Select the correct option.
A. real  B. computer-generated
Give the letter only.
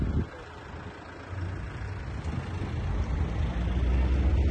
A